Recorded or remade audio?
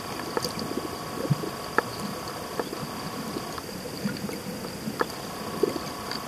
recorded